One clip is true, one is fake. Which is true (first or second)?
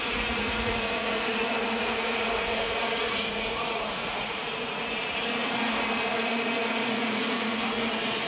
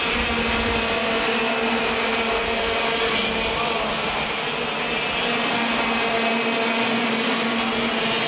second